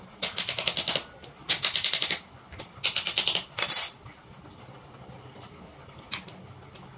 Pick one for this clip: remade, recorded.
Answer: recorded